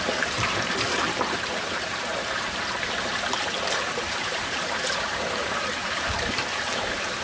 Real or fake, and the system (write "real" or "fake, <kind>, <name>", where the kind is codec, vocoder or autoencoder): fake, vocoder, BigVGAN v2